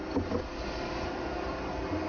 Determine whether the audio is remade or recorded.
recorded